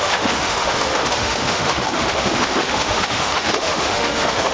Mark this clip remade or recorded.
remade